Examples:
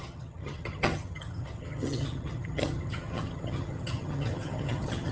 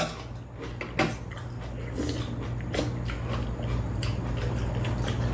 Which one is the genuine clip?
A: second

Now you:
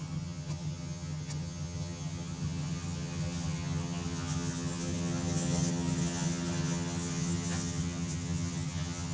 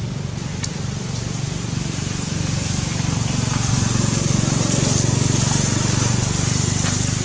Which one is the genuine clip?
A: second